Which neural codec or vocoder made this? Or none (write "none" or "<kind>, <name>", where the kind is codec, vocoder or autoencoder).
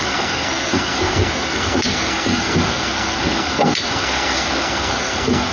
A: codec, SNAC